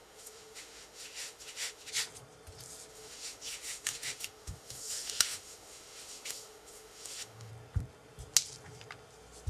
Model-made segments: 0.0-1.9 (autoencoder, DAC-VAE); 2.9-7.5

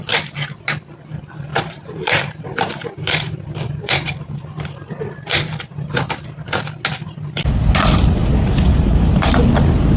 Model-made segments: 1.5-4.9 (vocoder, BigVGAN v2); 8.2-9.3

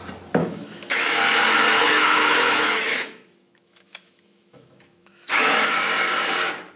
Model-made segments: 0.4-1.2 (autoencoder, DAC-VAE); 1.8-5.7

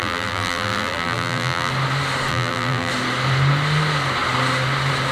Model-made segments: 0.0-1.7 (vocoder, BigVGAN v2); 2.3-2.9

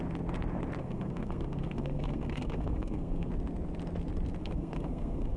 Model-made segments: 0.8-3.3 (codec, SNAC); 4.4-5.4

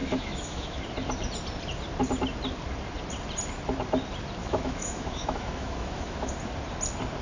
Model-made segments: 0.0-0.8 (autoencoder, DAC-VAE); 4.4-6.3